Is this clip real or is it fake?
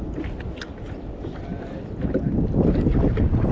real